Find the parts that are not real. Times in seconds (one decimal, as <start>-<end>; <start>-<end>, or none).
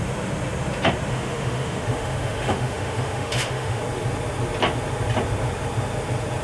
1.1-3.8